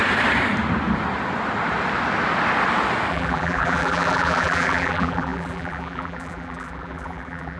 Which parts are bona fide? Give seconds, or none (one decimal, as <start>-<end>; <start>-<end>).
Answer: 0.0-3.1

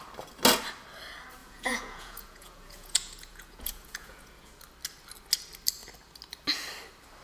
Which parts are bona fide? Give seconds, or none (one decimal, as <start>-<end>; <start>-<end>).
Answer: 0.0-1.4; 4.5-7.2

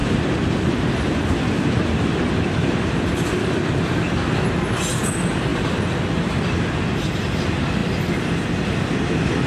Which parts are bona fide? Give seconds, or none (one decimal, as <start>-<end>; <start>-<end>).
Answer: 4.0-9.5

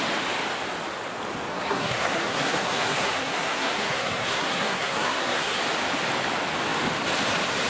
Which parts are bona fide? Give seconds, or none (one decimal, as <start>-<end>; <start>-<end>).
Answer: 0.0-1.5; 5.6-7.7

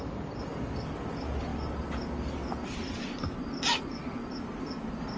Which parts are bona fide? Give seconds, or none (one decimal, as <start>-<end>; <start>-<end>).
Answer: 0.0-5.2

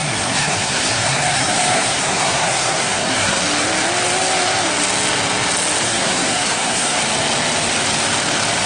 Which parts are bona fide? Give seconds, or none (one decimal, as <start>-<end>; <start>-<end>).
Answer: 3.4-5.8; 7.0-8.7